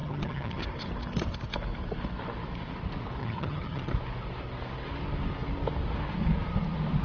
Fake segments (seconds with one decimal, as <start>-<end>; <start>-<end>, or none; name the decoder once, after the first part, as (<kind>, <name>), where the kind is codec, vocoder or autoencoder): 0.0-0.6 (vocoder, HiFi-GAN); 3.2-3.9